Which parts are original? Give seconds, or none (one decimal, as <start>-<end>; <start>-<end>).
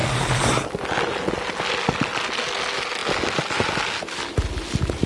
0.0-5.1